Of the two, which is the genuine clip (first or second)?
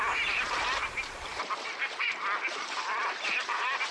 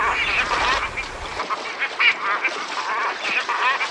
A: second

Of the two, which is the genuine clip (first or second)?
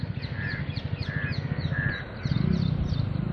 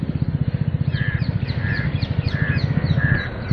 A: first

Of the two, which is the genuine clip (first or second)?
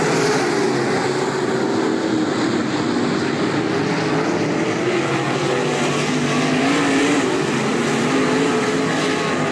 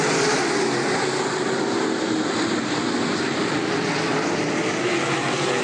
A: first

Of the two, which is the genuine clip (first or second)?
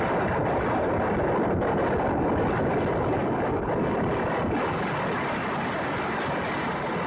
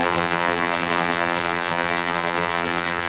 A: first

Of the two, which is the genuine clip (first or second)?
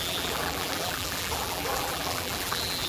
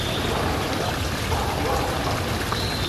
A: second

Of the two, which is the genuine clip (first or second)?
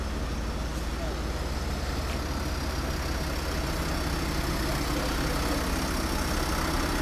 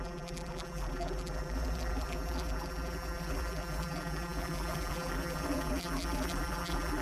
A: first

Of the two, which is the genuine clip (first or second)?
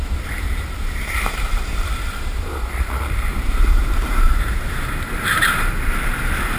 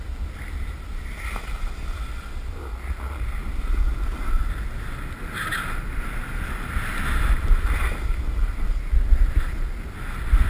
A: second